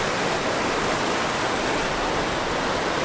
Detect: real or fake real